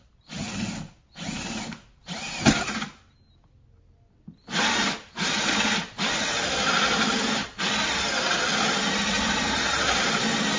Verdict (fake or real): real